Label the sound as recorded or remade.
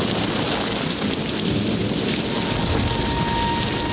recorded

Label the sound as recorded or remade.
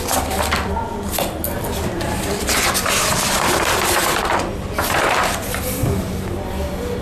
remade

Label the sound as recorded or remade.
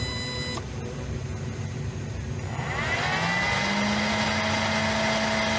recorded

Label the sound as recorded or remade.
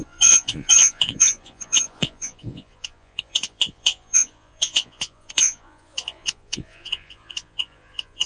remade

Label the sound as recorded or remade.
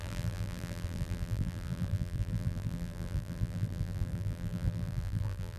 remade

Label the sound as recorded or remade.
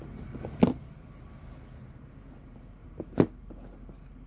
recorded